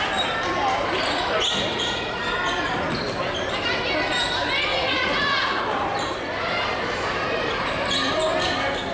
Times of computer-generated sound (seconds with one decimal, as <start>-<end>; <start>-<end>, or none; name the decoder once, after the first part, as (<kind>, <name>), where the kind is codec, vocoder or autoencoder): 1.7-2.2 (vocoder, Vocos); 4.7-5.6